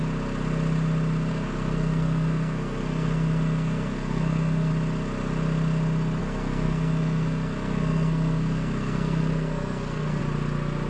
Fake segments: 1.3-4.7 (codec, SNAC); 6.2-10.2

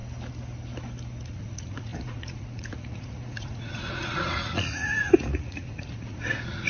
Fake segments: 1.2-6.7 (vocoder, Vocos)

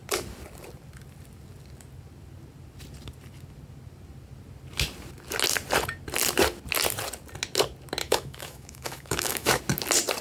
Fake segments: 8.0-9.6 (autoencoder, DAC-VAE)